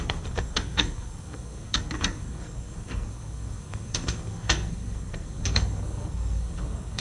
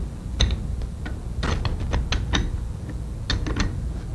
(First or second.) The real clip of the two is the second